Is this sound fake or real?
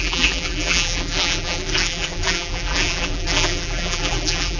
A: fake